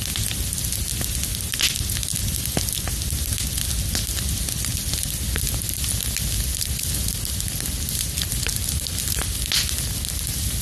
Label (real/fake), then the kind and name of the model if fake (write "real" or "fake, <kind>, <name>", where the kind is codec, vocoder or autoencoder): real